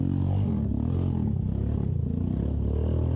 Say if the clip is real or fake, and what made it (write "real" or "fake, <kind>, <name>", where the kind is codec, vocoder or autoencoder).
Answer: real